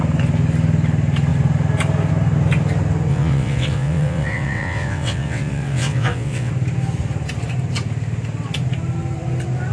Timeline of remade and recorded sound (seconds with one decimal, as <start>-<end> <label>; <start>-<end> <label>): 0.0-3.1 recorded; 3.1-6.5 remade; 6.5-9.7 recorded